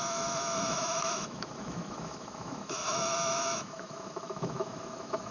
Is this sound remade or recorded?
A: remade